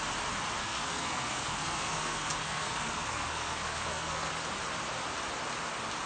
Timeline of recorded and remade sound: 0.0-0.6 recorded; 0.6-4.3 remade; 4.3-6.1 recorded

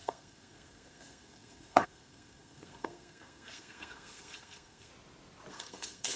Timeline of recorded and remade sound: 0.0-4.9 remade; 4.9-5.5 recorded; 5.5-6.2 remade

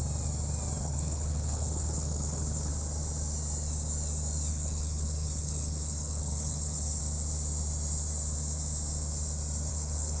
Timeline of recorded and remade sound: 0.0-0.8 recorded; 0.8-2.7 remade; 2.7-4.5 recorded; 4.5-7.0 remade; 7.0-9.7 recorded; 9.7-10.2 remade

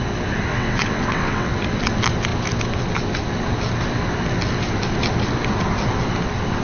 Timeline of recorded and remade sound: 0.0-0.5 recorded; 0.5-1.5 remade; 1.5-6.6 recorded